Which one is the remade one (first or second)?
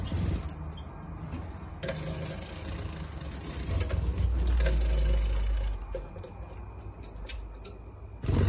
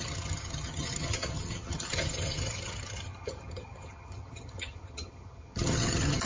second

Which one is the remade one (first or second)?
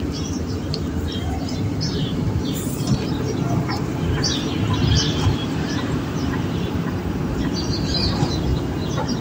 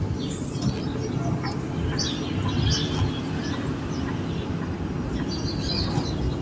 first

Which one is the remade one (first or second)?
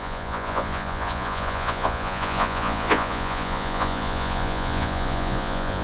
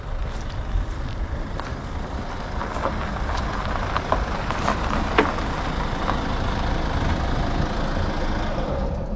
first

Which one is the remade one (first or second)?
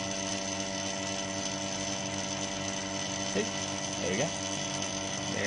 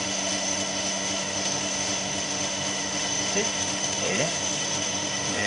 second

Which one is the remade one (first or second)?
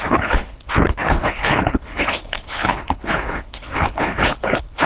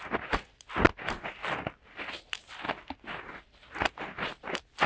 first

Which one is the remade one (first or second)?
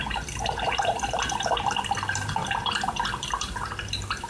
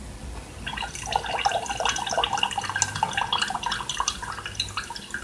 first